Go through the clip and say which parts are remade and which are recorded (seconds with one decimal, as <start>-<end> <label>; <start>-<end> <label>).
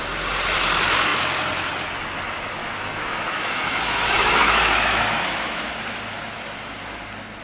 0.0-2.6 recorded; 2.6-5.7 remade; 5.7-7.4 recorded